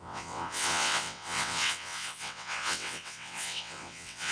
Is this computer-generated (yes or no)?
yes